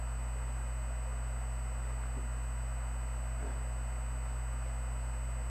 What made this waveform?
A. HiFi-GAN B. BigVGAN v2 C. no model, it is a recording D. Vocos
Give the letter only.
C